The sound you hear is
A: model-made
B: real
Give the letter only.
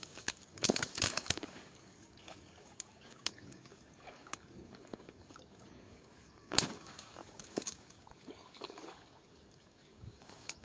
A